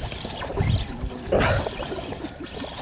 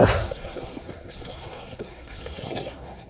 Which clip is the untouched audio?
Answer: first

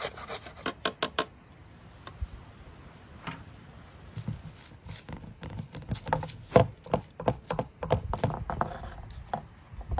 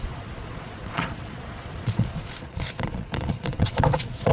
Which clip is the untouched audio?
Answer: first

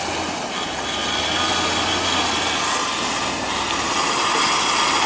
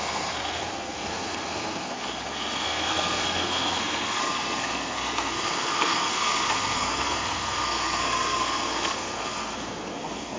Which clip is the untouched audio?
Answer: first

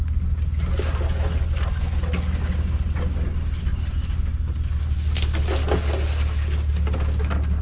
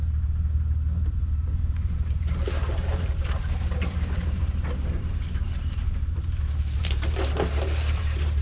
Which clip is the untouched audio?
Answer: first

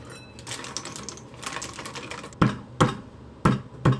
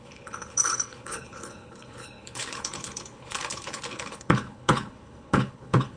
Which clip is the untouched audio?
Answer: first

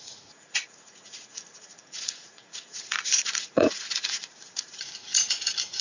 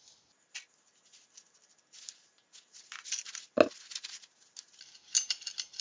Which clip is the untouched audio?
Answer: second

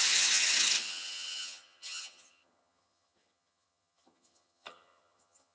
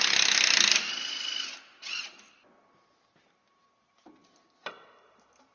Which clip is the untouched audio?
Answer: second